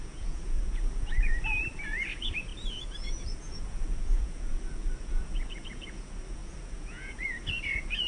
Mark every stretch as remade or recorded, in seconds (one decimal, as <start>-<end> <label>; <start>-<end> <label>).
0.0-8.1 remade